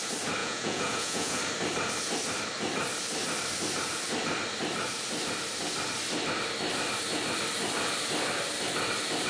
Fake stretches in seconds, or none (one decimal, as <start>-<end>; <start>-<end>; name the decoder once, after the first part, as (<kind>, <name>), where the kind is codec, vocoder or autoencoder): 0.4-1.4 (vocoder, Vocos)